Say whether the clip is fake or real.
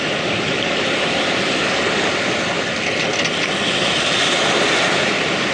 real